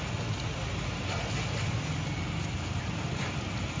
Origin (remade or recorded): recorded